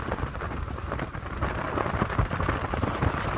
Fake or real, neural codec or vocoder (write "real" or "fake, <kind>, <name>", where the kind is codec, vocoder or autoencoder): real